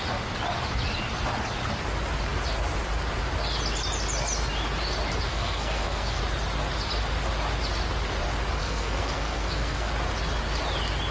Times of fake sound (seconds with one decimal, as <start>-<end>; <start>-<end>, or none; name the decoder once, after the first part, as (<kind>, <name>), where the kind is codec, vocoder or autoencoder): 5.3-6.2 (codec, SNAC); 8.6-9.9